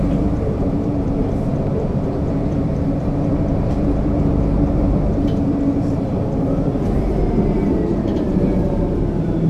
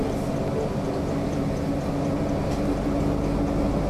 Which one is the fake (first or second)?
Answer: first